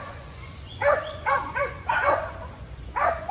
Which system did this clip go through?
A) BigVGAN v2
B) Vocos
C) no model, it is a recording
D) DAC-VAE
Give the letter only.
B